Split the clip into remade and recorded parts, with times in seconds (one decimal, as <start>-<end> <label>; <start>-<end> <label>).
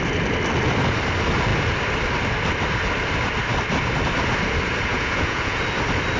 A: 0.0-4.9 recorded; 4.9-5.6 remade; 5.6-6.2 recorded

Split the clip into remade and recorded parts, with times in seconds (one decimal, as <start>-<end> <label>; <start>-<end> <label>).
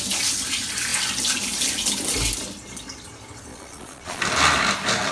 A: 0.0-3.5 recorded; 3.5-4.2 remade; 4.2-5.1 recorded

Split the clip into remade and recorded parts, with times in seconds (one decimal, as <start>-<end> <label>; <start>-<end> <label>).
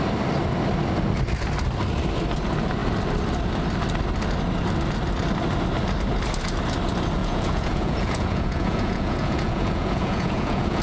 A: 0.0-7.2 recorded; 7.2-10.8 remade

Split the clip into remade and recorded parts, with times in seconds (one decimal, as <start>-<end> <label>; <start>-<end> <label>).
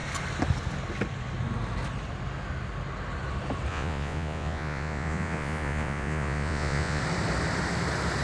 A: 0.0-3.7 recorded; 3.7-7.0 remade; 7.0-8.2 recorded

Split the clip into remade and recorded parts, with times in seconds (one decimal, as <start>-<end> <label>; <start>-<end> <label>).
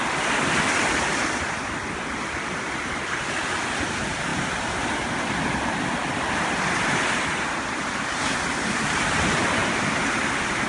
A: 0.0-10.7 recorded